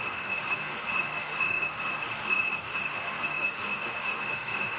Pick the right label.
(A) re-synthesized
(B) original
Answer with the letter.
A